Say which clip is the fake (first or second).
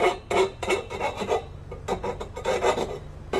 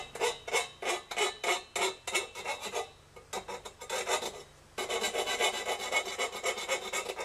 first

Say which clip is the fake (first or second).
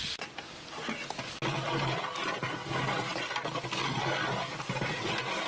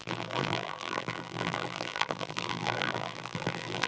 second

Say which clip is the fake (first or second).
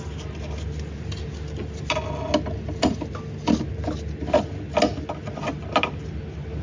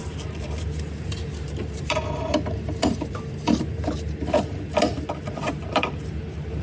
second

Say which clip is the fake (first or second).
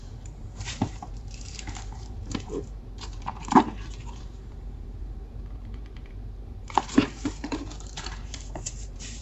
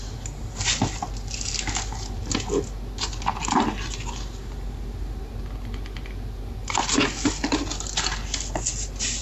first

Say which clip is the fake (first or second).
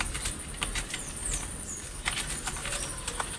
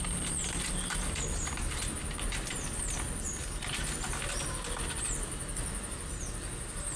first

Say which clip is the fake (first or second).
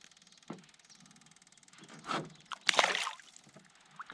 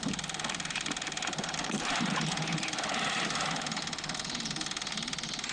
second